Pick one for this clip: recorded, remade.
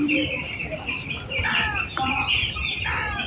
remade